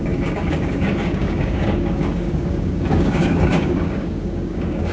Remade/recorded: remade